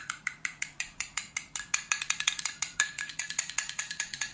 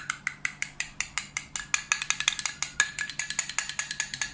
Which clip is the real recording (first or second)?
second